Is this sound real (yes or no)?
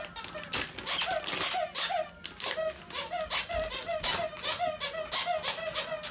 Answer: yes